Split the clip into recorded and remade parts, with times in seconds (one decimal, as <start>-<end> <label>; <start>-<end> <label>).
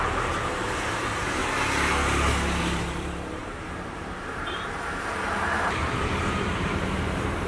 0.0-1.4 remade; 1.4-2.6 recorded; 2.6-7.5 remade